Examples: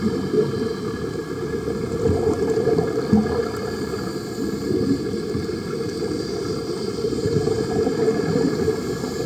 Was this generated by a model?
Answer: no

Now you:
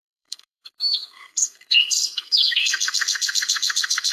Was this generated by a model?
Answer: yes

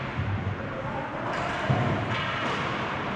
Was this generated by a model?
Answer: yes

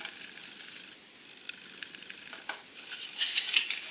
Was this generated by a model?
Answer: no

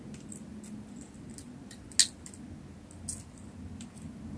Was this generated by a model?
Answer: no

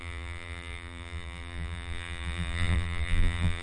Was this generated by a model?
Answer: yes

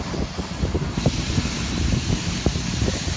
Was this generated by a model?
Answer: no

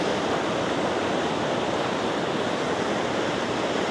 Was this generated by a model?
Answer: yes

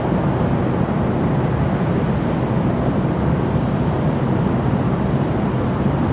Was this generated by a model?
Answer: no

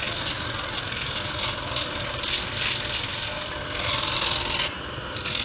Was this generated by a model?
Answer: no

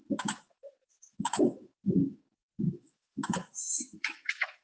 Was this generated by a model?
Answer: yes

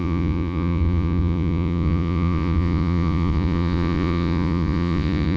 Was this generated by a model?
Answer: yes